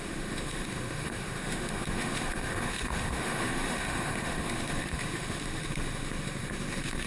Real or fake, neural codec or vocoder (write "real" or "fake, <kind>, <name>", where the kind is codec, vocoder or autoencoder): fake, autoencoder, DAC-VAE